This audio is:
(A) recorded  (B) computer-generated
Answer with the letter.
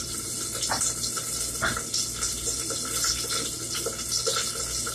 A